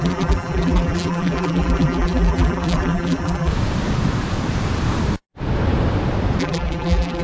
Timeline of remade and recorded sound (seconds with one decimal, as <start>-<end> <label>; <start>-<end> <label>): 0.0-3.5 remade; 3.5-6.4 recorded; 6.4-7.2 remade